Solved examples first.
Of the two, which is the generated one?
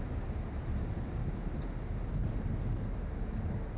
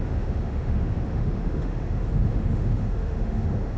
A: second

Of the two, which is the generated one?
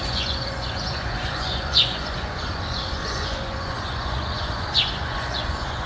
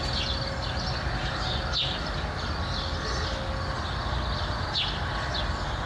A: first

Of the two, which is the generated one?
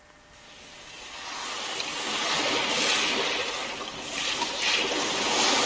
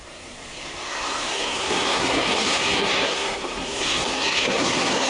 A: second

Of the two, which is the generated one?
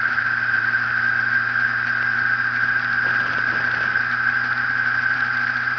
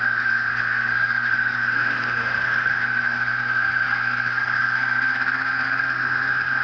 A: second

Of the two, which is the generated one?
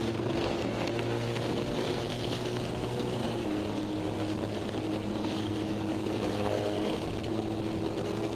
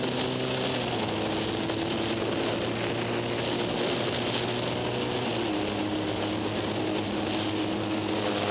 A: first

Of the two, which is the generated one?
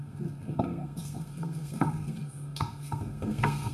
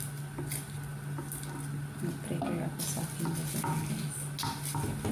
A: first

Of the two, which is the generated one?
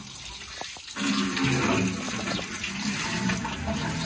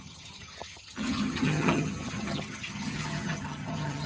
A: second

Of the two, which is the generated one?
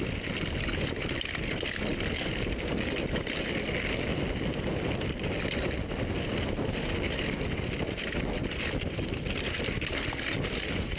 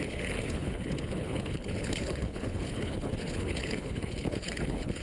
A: second